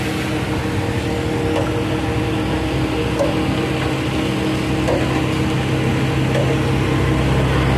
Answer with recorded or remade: recorded